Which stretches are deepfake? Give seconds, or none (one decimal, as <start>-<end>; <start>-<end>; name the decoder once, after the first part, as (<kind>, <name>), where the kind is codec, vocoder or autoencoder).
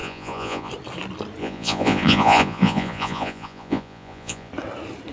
0.0-0.7 (vocoder, Vocos); 1.4-4.5